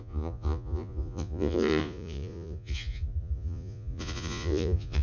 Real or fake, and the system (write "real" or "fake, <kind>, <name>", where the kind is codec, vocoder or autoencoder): fake, vocoder, Vocos